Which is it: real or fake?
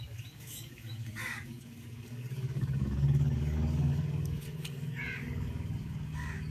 fake